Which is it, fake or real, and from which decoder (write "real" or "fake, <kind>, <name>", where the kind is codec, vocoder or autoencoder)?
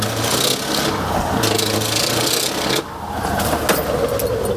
real